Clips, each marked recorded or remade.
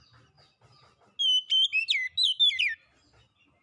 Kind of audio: recorded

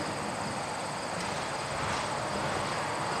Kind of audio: recorded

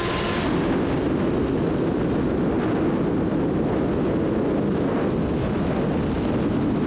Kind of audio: recorded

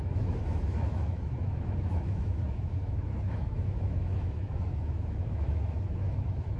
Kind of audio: remade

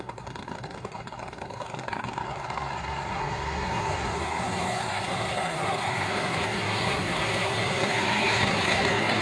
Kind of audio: remade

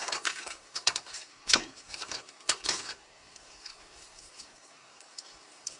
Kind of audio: remade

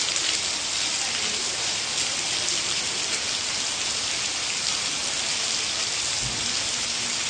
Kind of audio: recorded